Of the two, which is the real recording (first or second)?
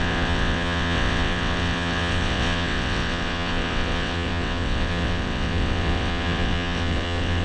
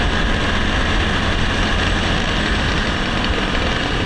second